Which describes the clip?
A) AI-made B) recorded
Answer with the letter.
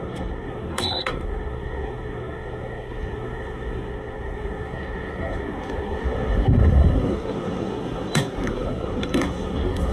A